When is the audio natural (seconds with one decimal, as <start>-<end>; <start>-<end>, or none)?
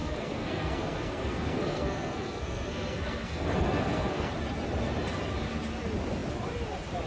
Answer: 4.3-7.1